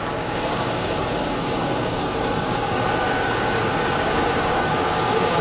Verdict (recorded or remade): remade